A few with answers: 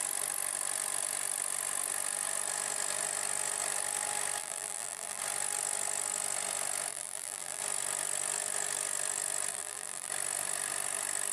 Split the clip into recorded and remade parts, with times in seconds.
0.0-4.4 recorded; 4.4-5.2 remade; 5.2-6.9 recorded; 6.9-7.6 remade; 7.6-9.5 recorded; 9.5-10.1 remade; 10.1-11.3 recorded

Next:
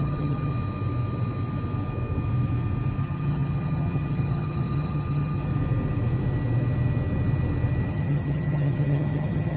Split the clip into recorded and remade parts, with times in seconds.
0.0-0.5 remade; 0.5-3.0 recorded; 3.0-5.5 remade; 5.5-7.9 recorded; 7.9-9.6 remade

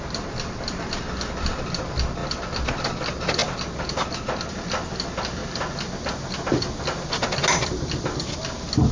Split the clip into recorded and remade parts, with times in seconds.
0.0-3.4 recorded; 3.4-4.2 remade; 4.2-8.9 recorded

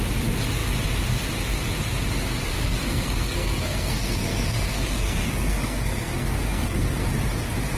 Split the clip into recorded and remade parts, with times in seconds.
0.0-2.5 recorded; 2.5-7.1 remade; 7.1-7.8 recorded

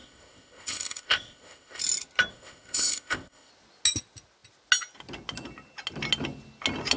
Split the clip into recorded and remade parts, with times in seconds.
0.0-1.8 remade; 1.8-2.3 recorded; 2.3-3.5 remade; 3.5-7.0 recorded

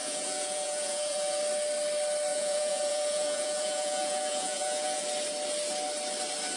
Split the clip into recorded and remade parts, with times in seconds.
0.0-1.4 remade; 1.4-2.3 recorded; 2.3-5.0 remade; 5.0-6.6 recorded

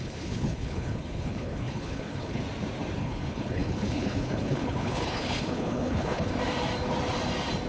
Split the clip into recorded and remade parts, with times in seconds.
0.0-2.4 remade; 2.4-3.0 recorded; 3.0-6.3 remade; 6.3-7.7 recorded